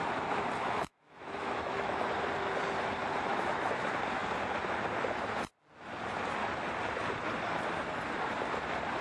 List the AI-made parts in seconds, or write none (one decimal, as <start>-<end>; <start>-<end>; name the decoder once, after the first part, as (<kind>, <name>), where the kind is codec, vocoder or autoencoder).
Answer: 0.6-2.0 (autoencoder, DAC-VAE); 3.3-3.8